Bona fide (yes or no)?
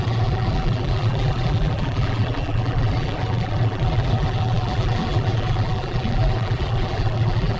no